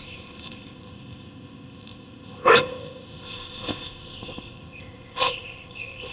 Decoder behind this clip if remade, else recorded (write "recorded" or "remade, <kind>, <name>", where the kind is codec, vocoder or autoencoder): remade, codec, ZipCodec